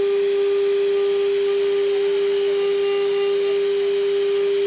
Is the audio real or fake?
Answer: real